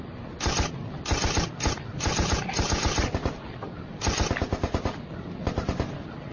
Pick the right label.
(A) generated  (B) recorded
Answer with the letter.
B